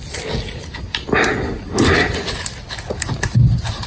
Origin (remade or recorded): recorded